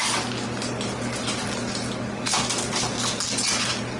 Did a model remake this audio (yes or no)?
no